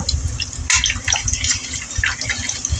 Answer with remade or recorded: recorded